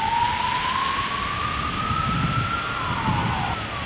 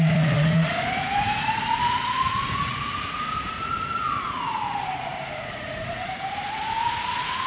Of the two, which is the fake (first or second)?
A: second